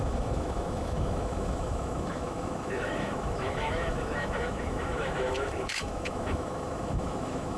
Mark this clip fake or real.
fake